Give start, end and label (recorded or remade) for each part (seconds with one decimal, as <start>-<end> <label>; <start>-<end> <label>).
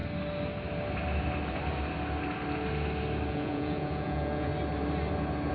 0.0-3.3 recorded; 3.3-4.5 remade; 4.5-5.5 recorded